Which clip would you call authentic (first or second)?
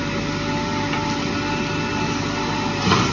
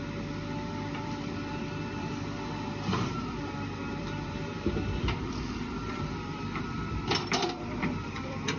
first